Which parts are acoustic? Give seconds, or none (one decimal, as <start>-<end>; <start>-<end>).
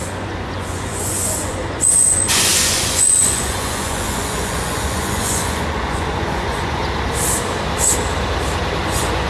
6.8-8.8